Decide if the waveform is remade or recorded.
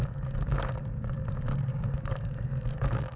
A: remade